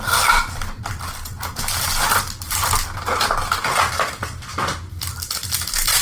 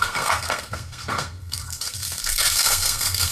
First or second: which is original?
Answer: first